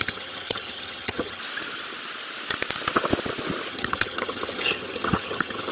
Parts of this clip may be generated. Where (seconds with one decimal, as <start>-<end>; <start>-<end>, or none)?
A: 0.0-1.4; 3.7-5.7